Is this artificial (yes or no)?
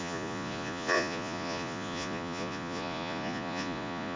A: yes